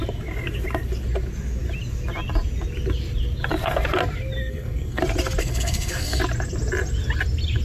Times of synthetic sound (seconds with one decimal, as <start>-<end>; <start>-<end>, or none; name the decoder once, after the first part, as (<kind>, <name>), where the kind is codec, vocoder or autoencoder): 4.4-5.0 (codec, SNAC); 5.4-6.2